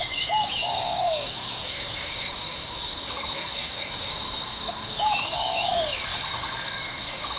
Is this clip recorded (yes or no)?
no